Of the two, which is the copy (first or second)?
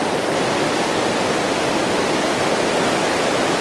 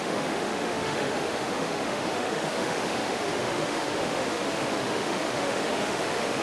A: second